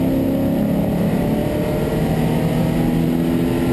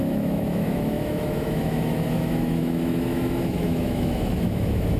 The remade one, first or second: second